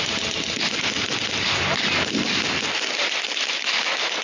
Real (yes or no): yes